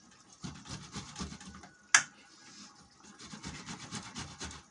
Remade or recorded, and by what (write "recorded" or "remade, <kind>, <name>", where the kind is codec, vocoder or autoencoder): recorded